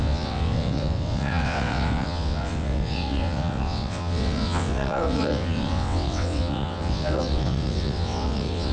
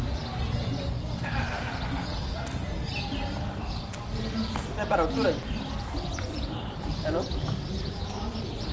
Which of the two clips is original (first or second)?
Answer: second